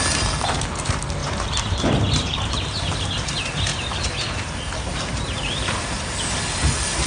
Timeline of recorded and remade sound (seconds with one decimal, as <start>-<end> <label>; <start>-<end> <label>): 0.0-1.2 recorded; 1.2-3.1 remade; 3.1-3.7 recorded; 3.7-6.3 remade; 6.3-7.1 recorded